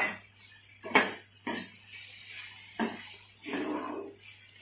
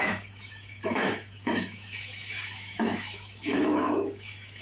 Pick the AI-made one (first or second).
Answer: second